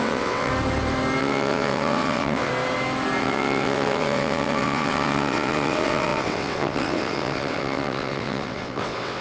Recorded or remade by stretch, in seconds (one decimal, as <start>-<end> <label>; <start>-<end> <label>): 0.0-0.5 remade; 0.5-1.2 recorded; 1.2-2.5 remade; 2.5-3.2 recorded; 3.2-9.2 remade